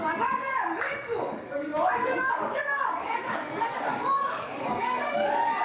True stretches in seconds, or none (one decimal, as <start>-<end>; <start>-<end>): none